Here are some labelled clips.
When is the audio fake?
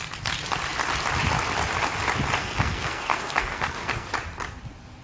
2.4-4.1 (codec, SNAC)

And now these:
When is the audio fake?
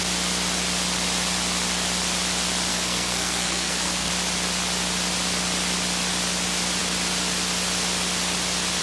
2.7-4.1 (codec, SNAC)